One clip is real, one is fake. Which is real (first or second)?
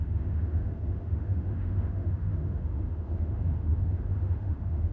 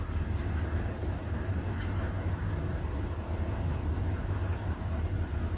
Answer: second